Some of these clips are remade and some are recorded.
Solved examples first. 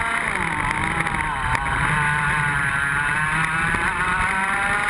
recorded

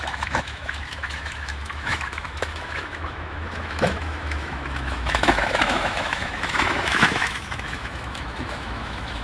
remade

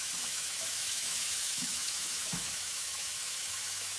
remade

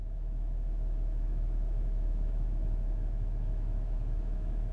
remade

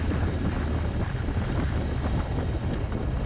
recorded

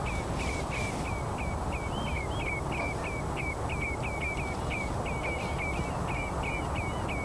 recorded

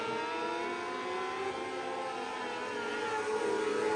recorded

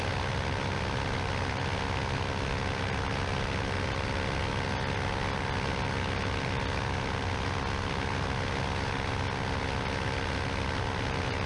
recorded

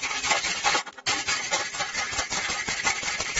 recorded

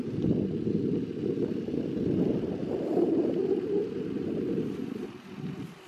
recorded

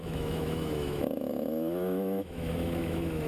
remade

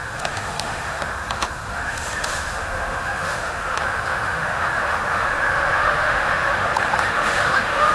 remade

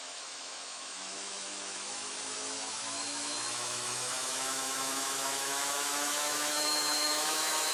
remade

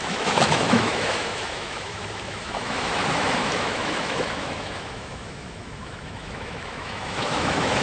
remade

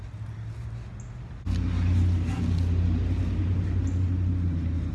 recorded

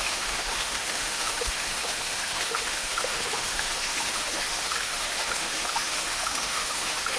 remade